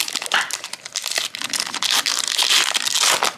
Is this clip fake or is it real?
real